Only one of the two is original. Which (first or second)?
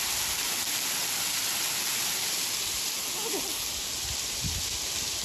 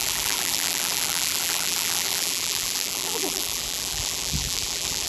first